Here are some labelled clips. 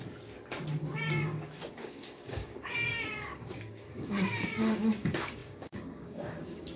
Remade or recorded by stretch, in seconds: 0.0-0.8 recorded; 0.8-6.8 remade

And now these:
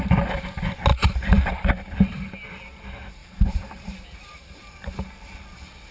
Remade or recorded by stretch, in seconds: 0.0-0.9 recorded; 0.9-1.7 remade; 1.7-3.2 recorded; 3.2-4.6 remade; 4.6-5.9 recorded

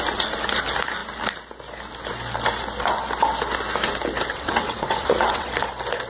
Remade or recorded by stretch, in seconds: 0.0-4.3 recorded; 4.3-5.5 remade; 5.5-6.1 recorded

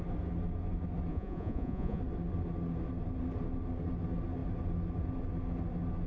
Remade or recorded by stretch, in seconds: 0.0-1.1 recorded; 1.1-2.0 remade; 2.0-6.1 recorded

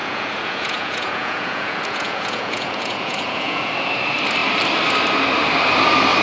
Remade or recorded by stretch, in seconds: 0.0-3.7 remade; 3.7-6.2 recorded